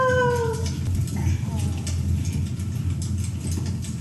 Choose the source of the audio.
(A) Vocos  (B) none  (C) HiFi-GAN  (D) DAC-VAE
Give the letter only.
B